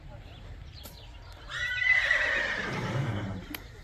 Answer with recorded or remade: remade